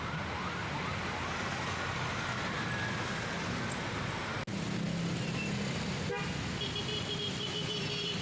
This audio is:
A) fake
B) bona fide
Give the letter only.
B